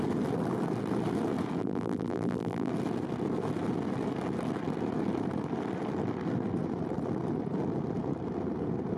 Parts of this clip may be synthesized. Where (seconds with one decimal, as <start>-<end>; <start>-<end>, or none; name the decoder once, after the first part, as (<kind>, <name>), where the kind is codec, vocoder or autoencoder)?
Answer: 1.6-2.7 (vocoder, BigVGAN v2)